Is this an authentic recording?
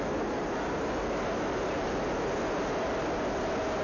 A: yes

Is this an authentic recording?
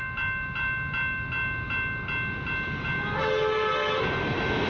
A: yes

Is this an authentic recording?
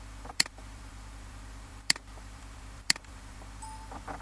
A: no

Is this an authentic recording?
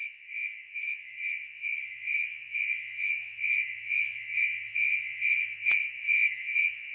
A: no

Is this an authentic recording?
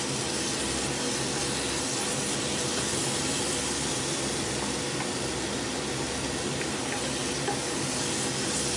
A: yes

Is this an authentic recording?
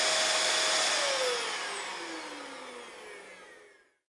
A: yes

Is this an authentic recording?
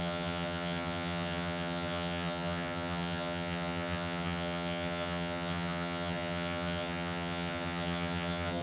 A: no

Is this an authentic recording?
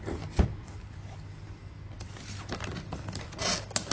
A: yes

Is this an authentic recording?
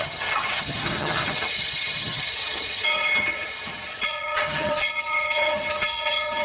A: no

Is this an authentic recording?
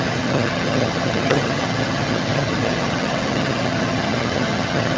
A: no